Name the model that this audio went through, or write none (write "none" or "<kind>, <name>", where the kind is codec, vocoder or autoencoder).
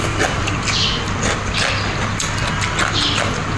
none